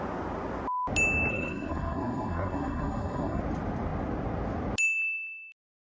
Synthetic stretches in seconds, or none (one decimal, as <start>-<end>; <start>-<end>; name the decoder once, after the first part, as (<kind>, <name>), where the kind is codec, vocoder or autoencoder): 1.3-3.4 (codec, SNAC)